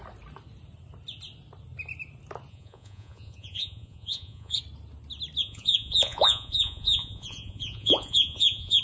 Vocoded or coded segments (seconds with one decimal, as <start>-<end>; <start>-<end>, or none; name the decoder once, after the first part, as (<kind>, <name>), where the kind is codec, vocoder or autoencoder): 2.5-4.6 (vocoder, Vocos); 5.4-8.8